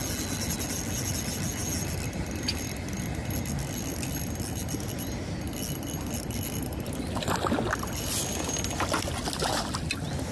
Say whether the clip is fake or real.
real